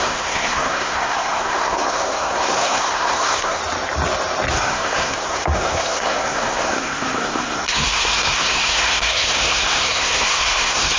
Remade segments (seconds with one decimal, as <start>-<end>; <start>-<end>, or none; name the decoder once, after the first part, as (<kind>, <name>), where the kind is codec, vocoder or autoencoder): 0.0-3.6 (codec, SNAC); 4.5-11.0